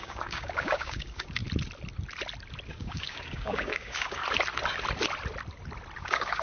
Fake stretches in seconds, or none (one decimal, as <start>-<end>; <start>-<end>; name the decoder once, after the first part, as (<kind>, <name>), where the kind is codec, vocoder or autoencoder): 0.0-1.4 (codec, DAC); 2.7-4.2; 6.0-6.4

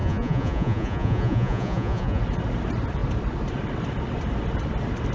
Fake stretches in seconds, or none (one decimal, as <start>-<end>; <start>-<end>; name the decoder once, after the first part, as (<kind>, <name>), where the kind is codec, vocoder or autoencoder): 0.0-2.2 (vocoder, Vocos)